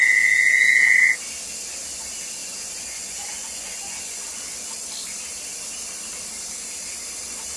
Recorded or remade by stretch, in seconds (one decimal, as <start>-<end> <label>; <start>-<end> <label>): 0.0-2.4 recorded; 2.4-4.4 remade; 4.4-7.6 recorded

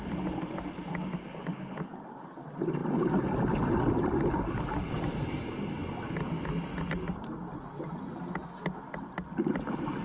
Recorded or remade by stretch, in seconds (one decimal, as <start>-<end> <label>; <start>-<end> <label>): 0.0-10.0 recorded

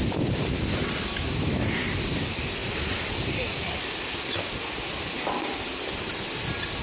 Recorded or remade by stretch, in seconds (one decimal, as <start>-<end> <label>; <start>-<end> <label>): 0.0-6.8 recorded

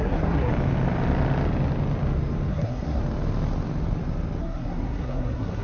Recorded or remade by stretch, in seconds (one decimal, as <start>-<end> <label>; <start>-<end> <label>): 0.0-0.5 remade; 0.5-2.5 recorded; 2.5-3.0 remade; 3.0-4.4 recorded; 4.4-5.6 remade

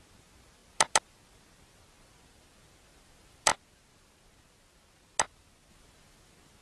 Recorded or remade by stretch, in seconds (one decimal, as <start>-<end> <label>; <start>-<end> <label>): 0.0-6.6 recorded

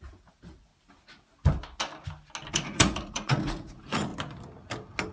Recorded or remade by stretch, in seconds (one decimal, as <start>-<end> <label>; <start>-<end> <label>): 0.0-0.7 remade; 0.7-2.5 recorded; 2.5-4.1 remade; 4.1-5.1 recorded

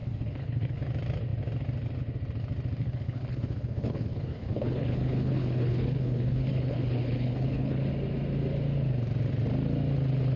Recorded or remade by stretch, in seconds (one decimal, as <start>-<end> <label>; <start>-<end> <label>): 0.0-0.8 remade; 0.8-2.8 recorded; 2.8-7.8 remade; 7.8-10.4 recorded